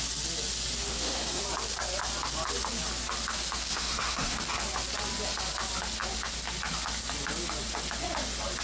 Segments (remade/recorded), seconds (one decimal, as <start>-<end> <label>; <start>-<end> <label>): 0.0-0.9 recorded; 0.9-1.4 remade; 1.4-3.7 recorded; 3.7-4.4 remade; 4.4-8.6 recorded